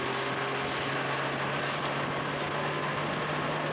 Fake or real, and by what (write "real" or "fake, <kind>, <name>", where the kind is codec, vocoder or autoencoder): real